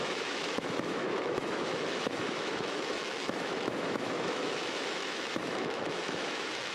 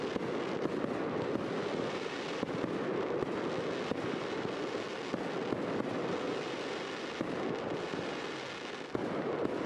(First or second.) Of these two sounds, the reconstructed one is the first